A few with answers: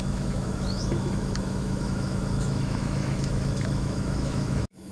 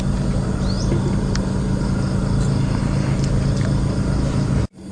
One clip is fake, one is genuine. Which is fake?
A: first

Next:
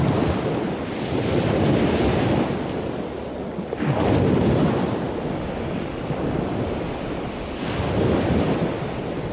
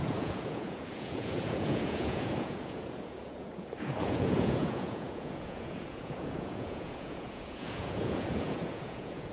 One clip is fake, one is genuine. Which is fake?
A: second